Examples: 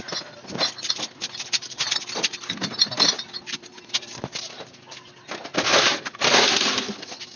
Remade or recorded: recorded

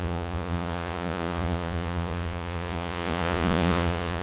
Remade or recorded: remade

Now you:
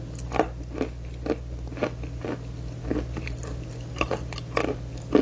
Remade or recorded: recorded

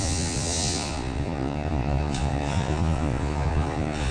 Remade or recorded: remade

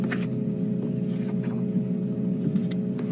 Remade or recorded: recorded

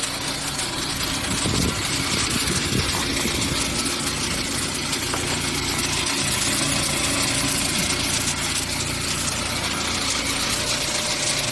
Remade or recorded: recorded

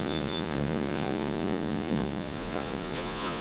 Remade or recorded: remade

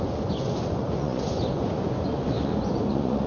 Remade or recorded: remade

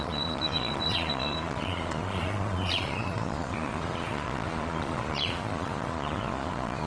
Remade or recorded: remade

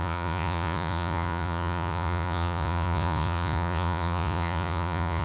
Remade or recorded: remade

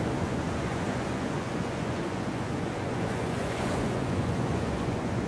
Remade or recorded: remade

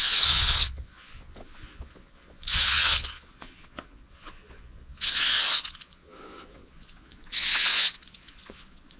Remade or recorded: remade